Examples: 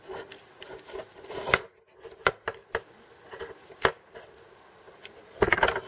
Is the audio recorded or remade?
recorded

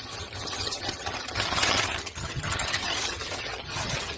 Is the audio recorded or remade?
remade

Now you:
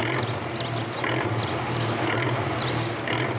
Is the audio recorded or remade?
recorded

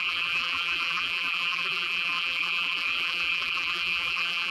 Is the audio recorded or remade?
remade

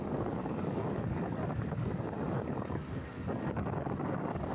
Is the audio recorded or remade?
remade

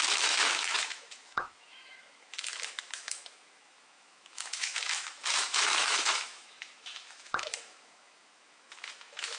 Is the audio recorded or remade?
remade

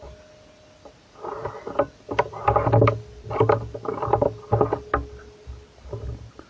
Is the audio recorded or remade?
recorded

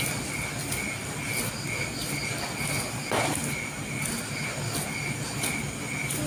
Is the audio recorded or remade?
recorded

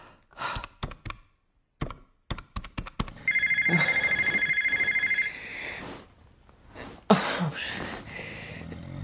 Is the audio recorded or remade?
recorded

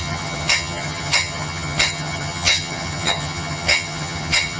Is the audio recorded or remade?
remade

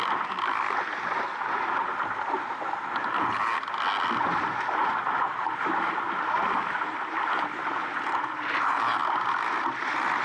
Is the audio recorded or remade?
recorded